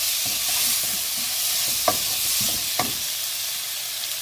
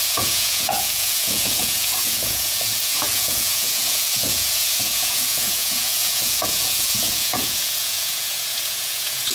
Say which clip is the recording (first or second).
first